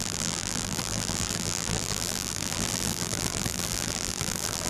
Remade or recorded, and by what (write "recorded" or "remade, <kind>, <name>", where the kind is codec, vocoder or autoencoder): remade, vocoder, BigVGAN v2